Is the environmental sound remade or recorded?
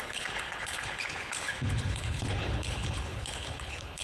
remade